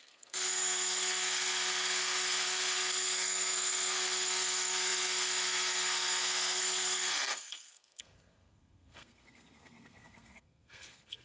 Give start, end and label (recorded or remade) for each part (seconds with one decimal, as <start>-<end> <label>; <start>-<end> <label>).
0.0-11.2 remade